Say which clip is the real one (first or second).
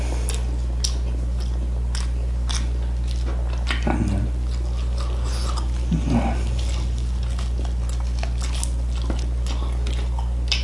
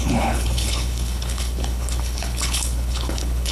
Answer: first